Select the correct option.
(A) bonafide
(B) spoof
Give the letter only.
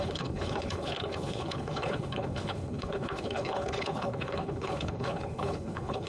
B